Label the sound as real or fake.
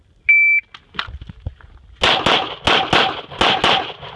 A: real